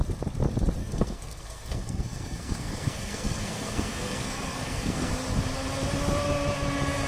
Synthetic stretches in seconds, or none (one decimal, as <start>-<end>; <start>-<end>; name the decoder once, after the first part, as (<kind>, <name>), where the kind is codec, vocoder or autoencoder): 0.8-5.1 (codec, SNAC)